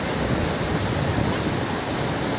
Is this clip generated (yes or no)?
no